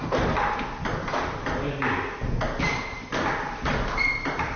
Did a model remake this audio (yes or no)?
no